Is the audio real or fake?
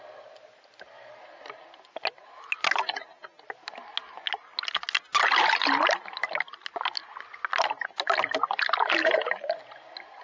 real